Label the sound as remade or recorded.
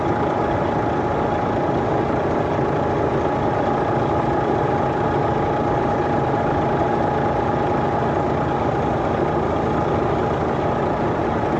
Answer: recorded